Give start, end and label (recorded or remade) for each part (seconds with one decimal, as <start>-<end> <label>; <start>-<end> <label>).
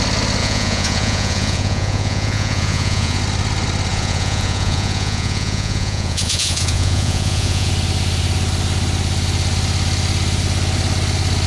0.0-0.4 recorded; 0.4-3.2 remade; 3.2-3.9 recorded; 3.9-7.7 remade; 7.7-11.5 recorded